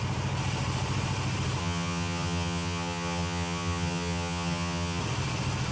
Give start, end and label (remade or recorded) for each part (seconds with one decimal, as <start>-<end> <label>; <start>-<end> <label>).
0.0-1.6 recorded; 1.6-5.0 remade; 5.0-5.7 recorded